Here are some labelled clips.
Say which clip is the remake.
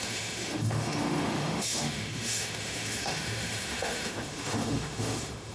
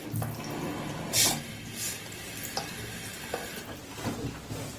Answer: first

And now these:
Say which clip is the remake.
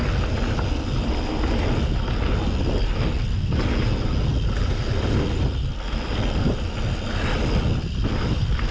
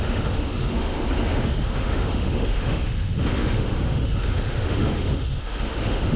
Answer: second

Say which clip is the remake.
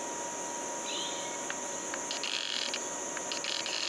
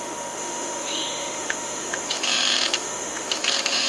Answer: second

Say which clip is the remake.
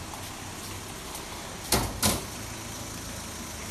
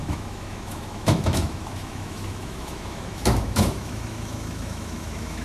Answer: second